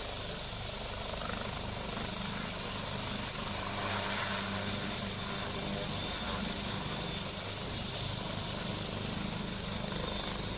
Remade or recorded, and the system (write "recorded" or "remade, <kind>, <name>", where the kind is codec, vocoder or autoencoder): recorded